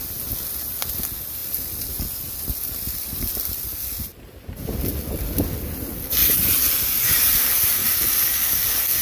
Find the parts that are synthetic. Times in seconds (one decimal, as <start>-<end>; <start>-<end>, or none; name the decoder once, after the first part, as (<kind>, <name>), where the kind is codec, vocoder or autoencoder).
0.0-4.1 (vocoder, BigVGAN v2); 5.6-6.2; 7.0-7.8